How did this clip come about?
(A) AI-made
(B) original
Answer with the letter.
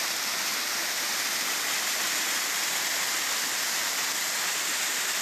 B